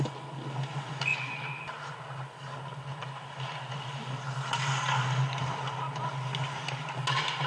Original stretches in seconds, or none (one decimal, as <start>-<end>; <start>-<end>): 0.0-7.5